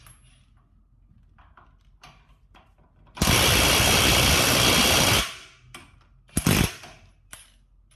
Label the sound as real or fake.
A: real